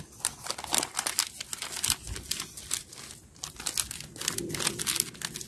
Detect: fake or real real